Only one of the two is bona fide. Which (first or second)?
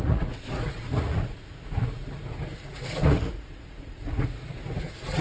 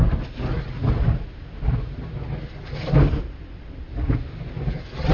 second